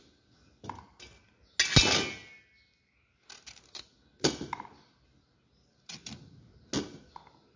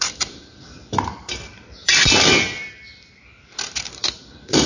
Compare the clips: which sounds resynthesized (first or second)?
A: second